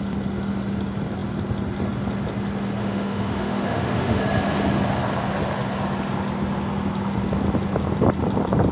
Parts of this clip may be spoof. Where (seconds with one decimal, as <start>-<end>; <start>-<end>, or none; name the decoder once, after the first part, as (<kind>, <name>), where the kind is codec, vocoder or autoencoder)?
2.8-4.2 (autoencoder, DAC-VAE)